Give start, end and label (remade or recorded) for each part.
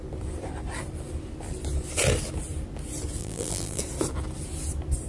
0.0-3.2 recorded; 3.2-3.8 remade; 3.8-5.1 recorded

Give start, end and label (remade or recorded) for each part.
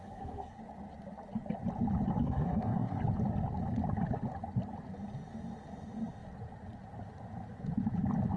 0.0-0.6 remade; 0.6-2.2 recorded; 2.2-3.0 remade; 3.0-8.4 recorded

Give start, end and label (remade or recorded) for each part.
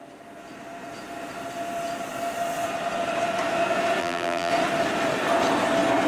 0.0-4.0 recorded; 4.0-4.5 remade; 4.5-6.1 recorded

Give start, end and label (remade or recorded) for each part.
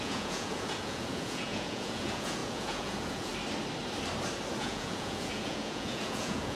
0.0-3.3 remade; 3.3-4.6 recorded; 4.6-6.5 remade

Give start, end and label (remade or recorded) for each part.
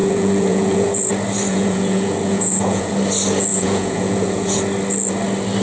0.0-1.1 remade; 1.1-1.5 recorded; 1.5-2.9 remade; 2.9-3.5 recorded; 3.5-4.6 remade; 4.6-5.6 recorded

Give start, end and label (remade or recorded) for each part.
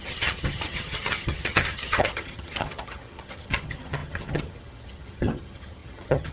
0.0-6.3 remade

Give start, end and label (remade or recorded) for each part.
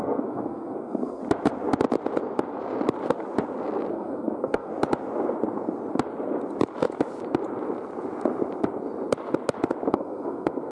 0.0-1.2 remade; 1.2-3.9 recorded; 3.9-4.7 remade; 4.7-9.9 recorded; 9.9-10.7 remade